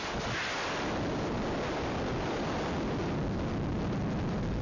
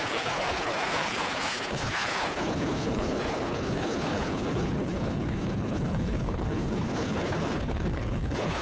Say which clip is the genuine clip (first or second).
first